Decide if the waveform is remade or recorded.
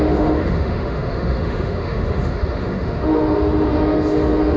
remade